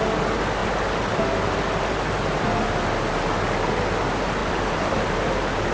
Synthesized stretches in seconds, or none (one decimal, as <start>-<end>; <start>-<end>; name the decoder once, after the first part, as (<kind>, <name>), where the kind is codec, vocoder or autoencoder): 4.4-5.7 (vocoder, BigVGAN v2)